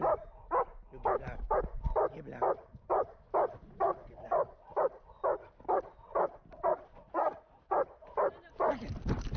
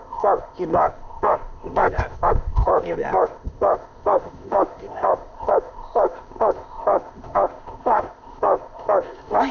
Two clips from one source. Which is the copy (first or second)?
second